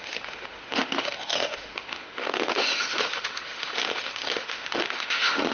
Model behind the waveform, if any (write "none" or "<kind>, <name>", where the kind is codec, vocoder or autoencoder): autoencoder, DAC-VAE